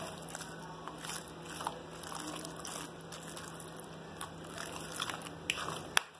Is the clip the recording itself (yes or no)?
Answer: yes